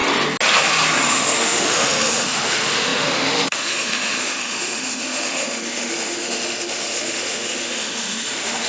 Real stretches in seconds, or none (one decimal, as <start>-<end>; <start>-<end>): 0.0-1.1